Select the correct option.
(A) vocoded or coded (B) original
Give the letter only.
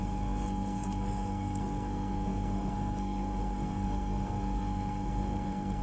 A